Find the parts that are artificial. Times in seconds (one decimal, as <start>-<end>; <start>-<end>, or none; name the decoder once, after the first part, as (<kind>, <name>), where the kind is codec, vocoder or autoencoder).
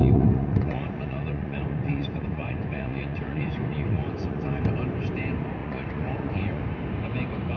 0.0-4.6 (vocoder, Vocos); 5.6-6.6